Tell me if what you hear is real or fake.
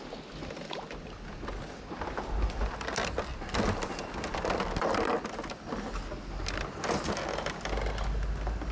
real